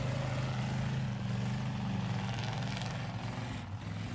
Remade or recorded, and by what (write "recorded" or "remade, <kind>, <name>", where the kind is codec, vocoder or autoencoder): recorded